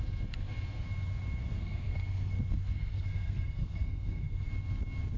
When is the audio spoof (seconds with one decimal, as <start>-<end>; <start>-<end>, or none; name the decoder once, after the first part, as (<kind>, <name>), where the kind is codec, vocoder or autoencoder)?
1.4-4.5 (codec, SNAC)

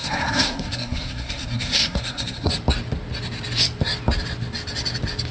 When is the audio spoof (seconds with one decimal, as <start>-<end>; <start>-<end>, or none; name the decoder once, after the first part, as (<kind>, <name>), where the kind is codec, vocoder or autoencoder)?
0.0-2.5 (codec, SNAC)